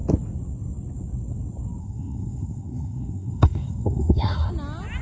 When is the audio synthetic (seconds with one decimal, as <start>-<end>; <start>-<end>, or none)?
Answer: 1.8-4.5